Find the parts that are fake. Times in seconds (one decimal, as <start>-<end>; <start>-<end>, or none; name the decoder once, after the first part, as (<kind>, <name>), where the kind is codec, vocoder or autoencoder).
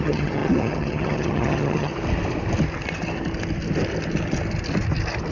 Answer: 0.0-1.9 (vocoder, HiFi-GAN)